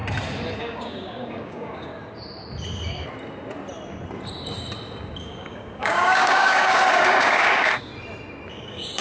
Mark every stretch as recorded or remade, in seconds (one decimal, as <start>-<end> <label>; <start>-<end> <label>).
0.0-0.6 recorded; 0.6-1.9 remade; 1.9-5.2 recorded; 5.2-7.9 remade; 7.9-8.5 recorded; 8.5-9.0 remade